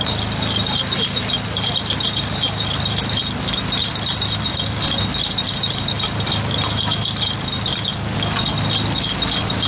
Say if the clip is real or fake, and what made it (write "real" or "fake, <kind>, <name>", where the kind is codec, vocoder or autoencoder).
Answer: real